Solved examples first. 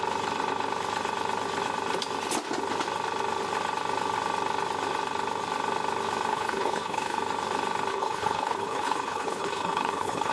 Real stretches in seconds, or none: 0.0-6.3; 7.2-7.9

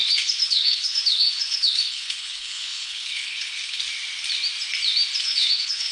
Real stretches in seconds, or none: 3.8-5.2

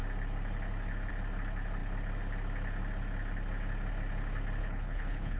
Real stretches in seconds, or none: 0.0-4.6

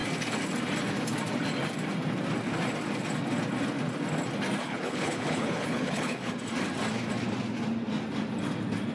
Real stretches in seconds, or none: 0.0-4.6; 6.3-8.9

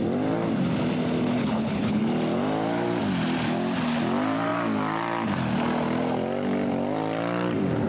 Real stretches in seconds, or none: 0.0-1.4; 2.0-7.9

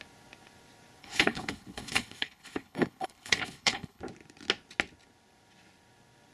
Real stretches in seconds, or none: 0.0-1.0; 4.0-6.3

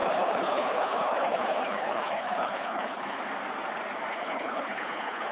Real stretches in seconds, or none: 3.2-4.1

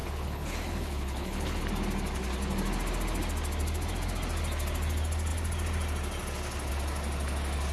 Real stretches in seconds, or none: 1.6-7.7